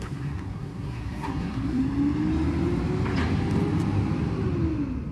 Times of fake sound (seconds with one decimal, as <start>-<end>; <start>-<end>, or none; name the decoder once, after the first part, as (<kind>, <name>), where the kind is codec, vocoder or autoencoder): 0.0-1.8 (codec, SNAC)